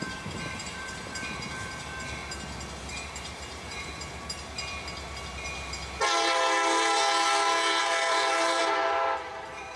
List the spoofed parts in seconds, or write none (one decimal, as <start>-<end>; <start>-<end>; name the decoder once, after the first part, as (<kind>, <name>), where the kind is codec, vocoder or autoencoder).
0.0-2.2 (vocoder, BigVGAN v2); 2.9-3.9; 7.8-9.8